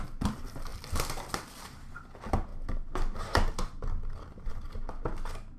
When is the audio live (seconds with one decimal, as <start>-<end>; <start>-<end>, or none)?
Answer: 0.0-5.6